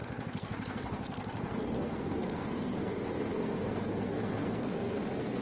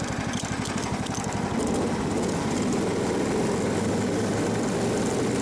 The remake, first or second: first